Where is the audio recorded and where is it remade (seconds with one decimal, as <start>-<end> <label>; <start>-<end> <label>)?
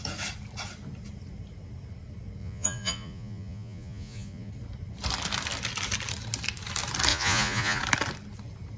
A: 0.0-2.4 recorded; 2.4-4.5 remade; 4.5-7.1 recorded; 7.1-7.8 remade; 7.8-8.8 recorded